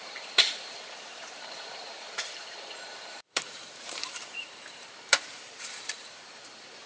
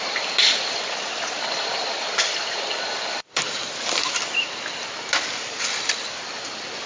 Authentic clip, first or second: second